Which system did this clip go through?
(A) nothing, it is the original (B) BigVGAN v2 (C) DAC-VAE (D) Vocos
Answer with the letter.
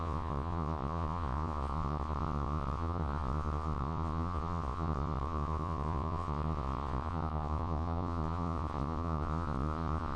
D